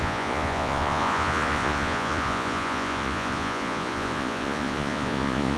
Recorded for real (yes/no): no